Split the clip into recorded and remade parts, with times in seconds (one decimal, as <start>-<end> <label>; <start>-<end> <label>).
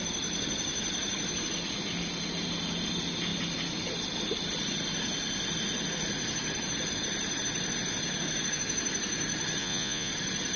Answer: 0.0-9.6 recorded; 9.6-10.1 remade; 10.1-10.6 recorded